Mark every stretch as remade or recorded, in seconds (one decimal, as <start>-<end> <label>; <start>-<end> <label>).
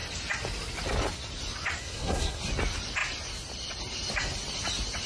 0.0-1.8 recorded; 1.8-2.4 remade; 2.4-5.1 recorded